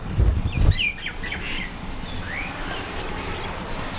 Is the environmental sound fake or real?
real